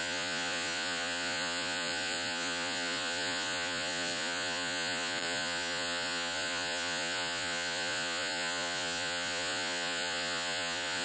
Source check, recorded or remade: remade